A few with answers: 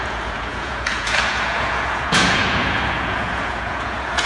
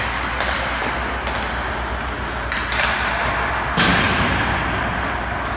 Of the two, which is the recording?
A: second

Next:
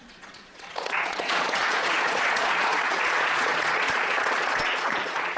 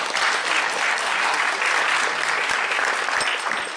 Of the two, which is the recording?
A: second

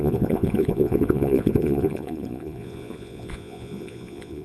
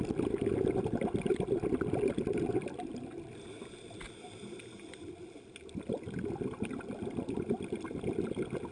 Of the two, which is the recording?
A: second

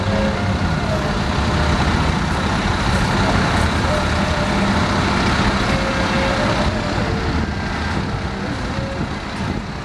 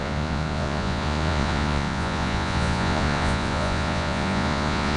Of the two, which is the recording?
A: first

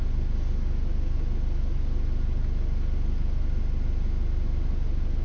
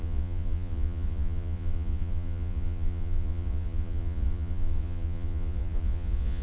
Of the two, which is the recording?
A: first